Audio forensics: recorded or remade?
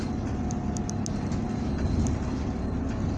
recorded